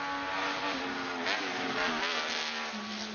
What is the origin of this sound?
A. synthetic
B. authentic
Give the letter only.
B